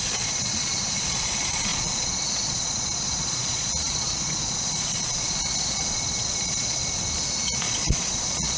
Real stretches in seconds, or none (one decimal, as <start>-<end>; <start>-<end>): 6.8-7.3